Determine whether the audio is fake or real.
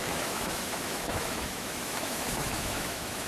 fake